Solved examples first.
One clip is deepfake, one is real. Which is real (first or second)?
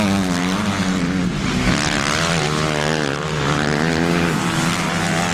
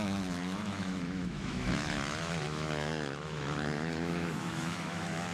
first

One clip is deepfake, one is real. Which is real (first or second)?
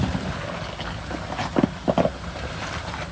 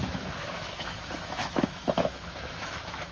first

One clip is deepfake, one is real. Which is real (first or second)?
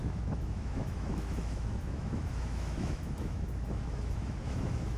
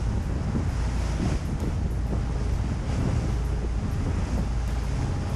second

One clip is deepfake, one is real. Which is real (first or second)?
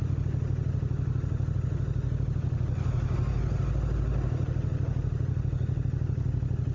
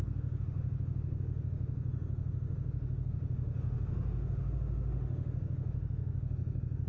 first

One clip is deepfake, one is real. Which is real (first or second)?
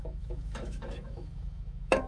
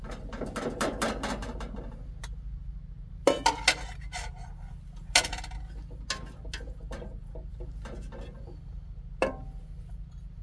second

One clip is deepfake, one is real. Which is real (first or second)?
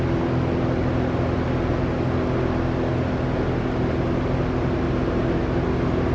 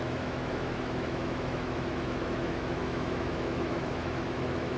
first